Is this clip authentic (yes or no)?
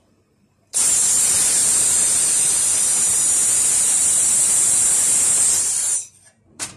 no